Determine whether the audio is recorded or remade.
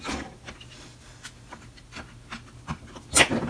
recorded